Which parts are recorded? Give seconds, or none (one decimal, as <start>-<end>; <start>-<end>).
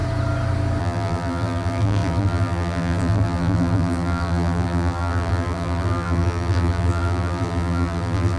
0.0-0.8